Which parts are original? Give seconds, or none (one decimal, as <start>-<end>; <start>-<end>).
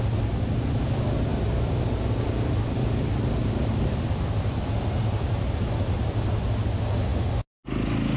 0.0-8.2